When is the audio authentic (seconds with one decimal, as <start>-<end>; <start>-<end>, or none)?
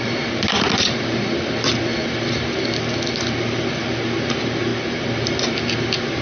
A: 0.0-6.2